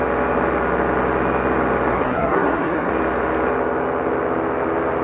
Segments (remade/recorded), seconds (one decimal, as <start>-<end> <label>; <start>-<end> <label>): 0.0-1.9 recorded; 1.9-2.9 remade; 2.9-5.0 recorded